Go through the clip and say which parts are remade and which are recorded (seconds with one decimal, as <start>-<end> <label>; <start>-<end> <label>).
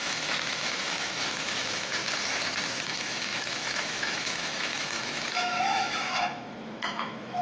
0.0-2.0 remade; 2.0-2.8 recorded; 2.8-7.4 remade